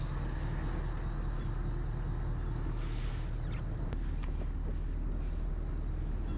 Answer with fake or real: real